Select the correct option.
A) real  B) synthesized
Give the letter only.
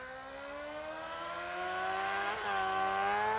A